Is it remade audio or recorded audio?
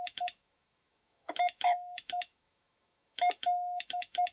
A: remade